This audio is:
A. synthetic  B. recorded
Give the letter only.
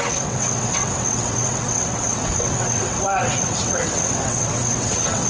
A